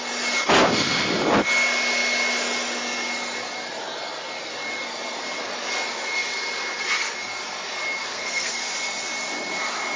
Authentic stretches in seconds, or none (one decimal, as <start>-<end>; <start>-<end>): 0.0-8.0; 8.6-10.0